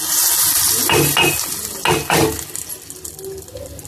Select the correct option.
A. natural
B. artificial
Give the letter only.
A